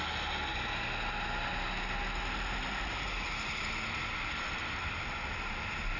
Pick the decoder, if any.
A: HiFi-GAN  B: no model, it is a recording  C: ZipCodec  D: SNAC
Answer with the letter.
B